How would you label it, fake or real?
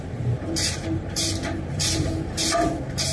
fake